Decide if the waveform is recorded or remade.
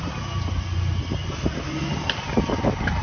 recorded